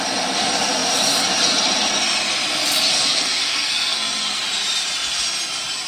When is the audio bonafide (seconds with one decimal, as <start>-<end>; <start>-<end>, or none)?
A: 0.0-2.9; 4.4-5.9

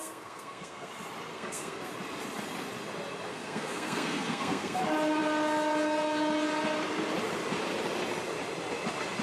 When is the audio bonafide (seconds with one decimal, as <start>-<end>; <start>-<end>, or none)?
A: 0.9-1.3; 1.9-3.3; 4.8-9.2

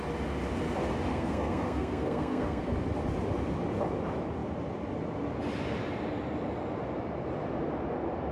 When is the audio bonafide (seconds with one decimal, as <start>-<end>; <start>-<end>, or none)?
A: 0.0-1.1; 2.7-8.3

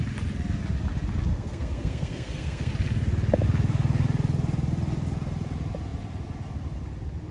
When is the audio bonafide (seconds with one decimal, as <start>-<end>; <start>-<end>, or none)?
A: 0.0-1.3; 2.7-7.3

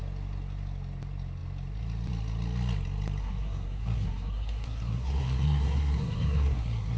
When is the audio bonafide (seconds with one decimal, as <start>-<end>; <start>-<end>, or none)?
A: 0.0-3.2